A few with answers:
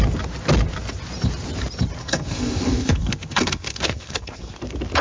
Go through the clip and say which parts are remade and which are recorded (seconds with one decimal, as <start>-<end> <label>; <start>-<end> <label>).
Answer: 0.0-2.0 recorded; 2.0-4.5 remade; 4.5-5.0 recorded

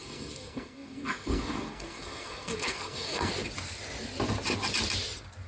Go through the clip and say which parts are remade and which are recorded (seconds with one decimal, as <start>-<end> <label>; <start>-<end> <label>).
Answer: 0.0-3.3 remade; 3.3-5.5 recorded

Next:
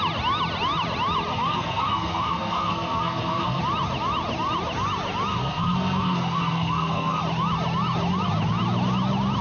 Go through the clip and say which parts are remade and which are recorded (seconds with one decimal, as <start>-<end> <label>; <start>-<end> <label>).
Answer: 0.0-1.3 recorded; 1.3-3.6 remade; 3.6-5.3 recorded; 5.3-7.2 remade; 7.2-9.4 recorded

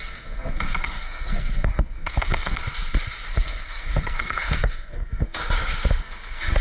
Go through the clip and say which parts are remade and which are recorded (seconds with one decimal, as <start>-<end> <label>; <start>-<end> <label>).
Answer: 0.0-2.6 remade; 2.6-3.3 recorded; 3.3-5.4 remade; 5.4-6.0 recorded; 6.0-6.6 remade